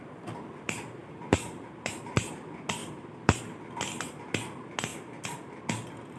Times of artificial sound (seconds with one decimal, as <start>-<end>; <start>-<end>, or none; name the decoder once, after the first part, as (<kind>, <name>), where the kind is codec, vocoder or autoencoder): 1.0-2.3 (vocoder, BigVGAN v2); 2.8-3.4